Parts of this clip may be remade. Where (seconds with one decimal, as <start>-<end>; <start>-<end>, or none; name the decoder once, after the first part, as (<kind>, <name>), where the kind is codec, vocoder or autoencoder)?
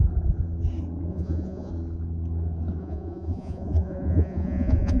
1.1-1.7 (vocoder, Vocos); 2.8-5.0